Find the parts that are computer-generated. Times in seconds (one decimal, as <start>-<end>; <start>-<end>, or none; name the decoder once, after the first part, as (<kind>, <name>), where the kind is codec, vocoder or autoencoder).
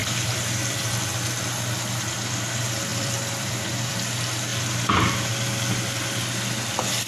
0.0-0.9 (vocoder, BigVGAN v2); 2.9-3.9